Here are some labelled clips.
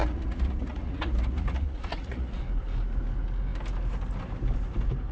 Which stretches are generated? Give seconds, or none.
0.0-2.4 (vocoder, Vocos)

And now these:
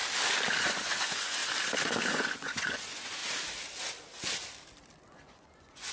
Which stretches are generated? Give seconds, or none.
0.6-1.4 (vocoder, Vocos); 2.1-3.2; 5.1-5.9